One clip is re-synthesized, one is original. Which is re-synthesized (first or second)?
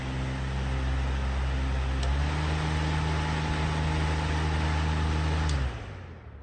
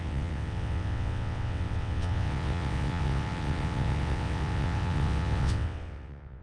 second